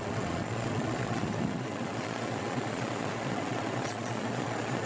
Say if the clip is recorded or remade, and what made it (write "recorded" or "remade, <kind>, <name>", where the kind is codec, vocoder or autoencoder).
remade, vocoder, Vocos